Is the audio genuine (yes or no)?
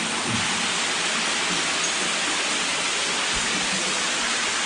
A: yes